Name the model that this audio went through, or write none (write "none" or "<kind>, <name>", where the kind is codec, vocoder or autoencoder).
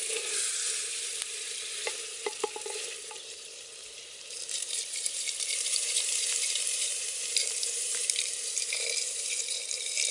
vocoder, BigVGAN v2